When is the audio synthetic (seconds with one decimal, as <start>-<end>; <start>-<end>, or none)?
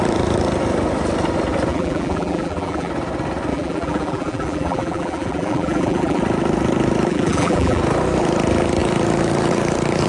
1.7-2.9; 3.5-6.2; 7.1-7.8